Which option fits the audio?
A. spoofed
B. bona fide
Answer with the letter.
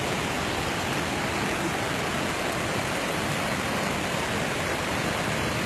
A